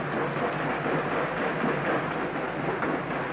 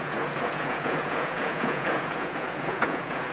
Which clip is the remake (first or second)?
second